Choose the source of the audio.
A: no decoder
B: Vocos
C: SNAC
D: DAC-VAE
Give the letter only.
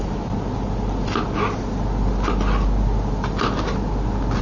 A